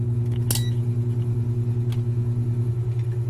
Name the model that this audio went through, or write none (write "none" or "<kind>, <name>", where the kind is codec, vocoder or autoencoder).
none